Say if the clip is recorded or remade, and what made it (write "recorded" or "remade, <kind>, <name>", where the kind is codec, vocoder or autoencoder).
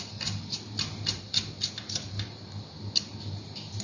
recorded